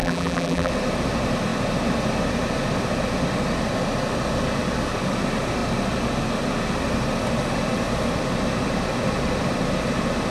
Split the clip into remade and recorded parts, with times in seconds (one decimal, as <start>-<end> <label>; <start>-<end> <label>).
0.0-0.7 remade; 0.7-10.3 recorded